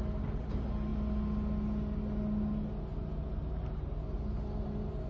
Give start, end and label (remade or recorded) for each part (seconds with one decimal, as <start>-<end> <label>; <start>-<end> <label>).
0.0-5.1 recorded

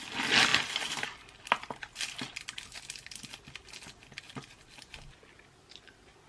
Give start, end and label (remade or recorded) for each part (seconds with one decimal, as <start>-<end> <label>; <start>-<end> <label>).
0.0-6.3 recorded

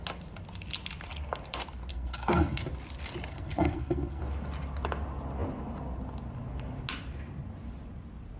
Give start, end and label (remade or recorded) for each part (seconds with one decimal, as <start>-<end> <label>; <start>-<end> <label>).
0.0-1.9 recorded; 1.9-2.6 remade; 2.6-3.3 recorded; 3.3-4.2 remade; 4.2-8.4 recorded

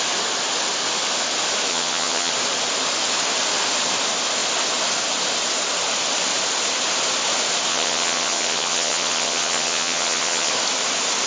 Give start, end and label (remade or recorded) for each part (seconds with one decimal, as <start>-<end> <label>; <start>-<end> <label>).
0.0-1.7 recorded; 1.7-2.3 remade; 2.3-7.7 recorded; 7.7-10.5 remade; 10.5-11.3 recorded